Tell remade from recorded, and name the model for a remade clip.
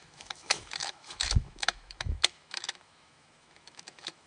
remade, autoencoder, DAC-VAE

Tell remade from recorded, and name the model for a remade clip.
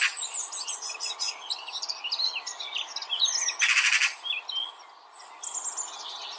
recorded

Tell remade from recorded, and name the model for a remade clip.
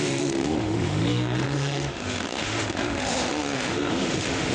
remade, autoencoder, DAC-VAE